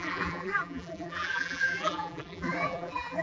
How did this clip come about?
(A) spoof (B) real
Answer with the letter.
A